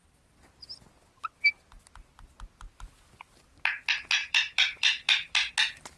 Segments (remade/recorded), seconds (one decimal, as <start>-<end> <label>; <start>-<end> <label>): 0.0-4.2 recorded; 4.2-5.5 remade; 5.5-6.0 recorded